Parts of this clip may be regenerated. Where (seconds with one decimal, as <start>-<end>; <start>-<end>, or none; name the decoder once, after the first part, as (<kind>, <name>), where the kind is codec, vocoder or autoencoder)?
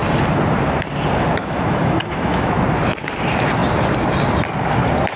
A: 1.4-2.6 (autoencoder, DAC-VAE)